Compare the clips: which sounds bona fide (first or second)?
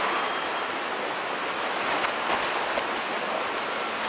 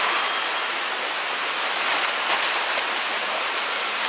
first